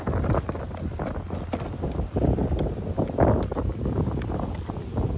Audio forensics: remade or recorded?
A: recorded